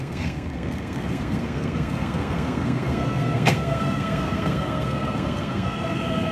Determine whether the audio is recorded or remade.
remade